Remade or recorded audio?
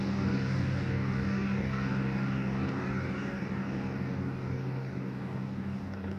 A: remade